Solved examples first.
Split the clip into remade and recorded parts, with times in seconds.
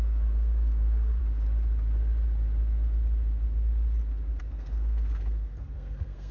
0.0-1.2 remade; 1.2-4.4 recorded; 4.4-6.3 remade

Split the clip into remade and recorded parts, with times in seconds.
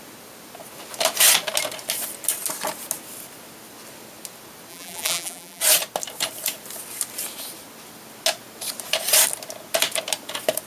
0.0-4.7 recorded; 4.7-5.6 remade; 5.6-10.7 recorded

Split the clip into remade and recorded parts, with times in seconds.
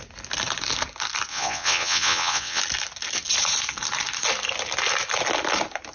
0.0-1.3 recorded; 1.3-2.6 remade; 2.6-5.9 recorded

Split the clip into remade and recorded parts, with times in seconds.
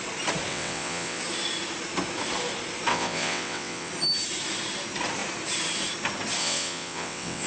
0.0-0.5 recorded; 0.5-1.2 remade; 1.2-2.9 recorded; 2.9-3.9 remade; 3.9-6.4 recorded; 6.4-7.5 remade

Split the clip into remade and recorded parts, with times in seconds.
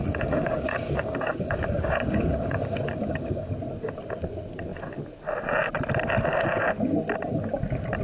0.0-3.5 remade; 3.5-8.0 recorded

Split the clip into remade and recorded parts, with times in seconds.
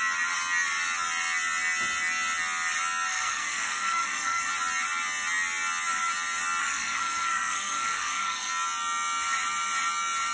0.0-3.1 recorded; 3.1-4.5 remade; 4.5-6.6 recorded; 6.6-8.5 remade; 8.5-10.3 recorded